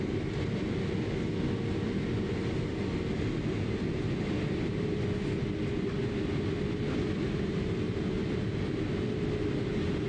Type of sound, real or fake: real